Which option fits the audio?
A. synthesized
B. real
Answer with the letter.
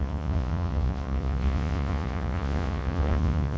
A